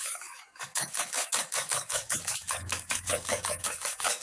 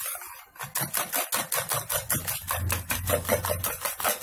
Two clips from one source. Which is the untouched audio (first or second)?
second